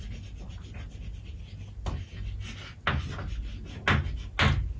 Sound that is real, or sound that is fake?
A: real